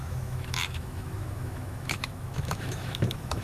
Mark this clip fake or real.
fake